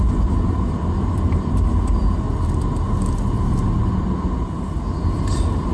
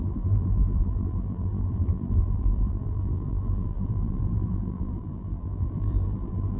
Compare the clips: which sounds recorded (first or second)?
first